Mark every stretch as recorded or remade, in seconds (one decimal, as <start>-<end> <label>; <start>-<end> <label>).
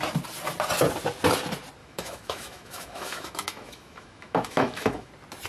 0.0-1.8 recorded; 1.8-5.1 remade; 5.1-5.5 recorded